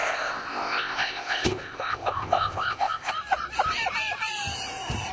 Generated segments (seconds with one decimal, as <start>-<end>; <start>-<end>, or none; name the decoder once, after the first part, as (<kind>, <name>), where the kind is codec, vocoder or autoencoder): 0.0-3.1 (codec, ZipCodec)